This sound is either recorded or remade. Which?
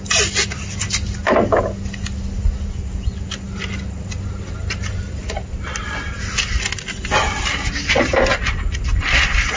recorded